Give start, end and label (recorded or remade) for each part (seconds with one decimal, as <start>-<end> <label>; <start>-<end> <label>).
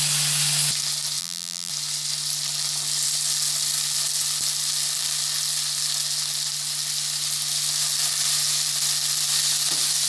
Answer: 0.0-1.2 recorded; 1.2-1.7 remade; 1.7-10.1 recorded